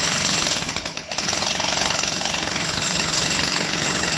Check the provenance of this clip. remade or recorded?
remade